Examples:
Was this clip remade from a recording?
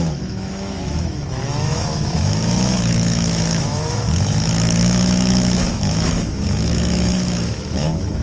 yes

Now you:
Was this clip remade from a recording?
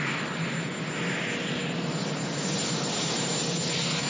no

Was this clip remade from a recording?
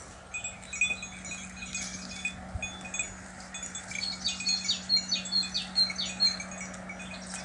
no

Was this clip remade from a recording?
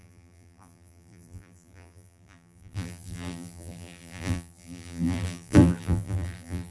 yes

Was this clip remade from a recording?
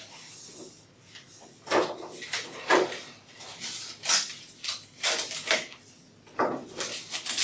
no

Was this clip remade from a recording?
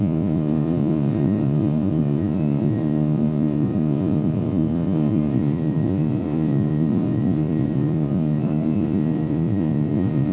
yes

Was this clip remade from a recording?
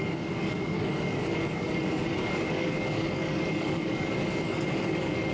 yes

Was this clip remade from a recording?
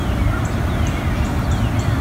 no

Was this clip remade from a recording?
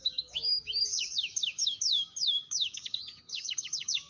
yes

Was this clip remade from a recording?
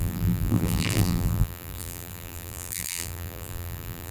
yes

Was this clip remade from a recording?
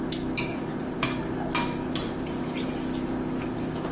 no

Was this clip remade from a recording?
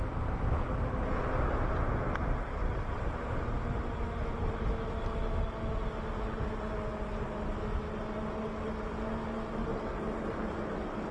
no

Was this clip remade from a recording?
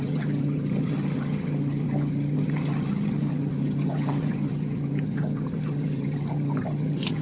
yes